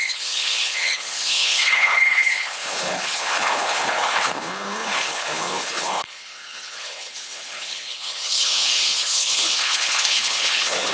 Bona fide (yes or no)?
no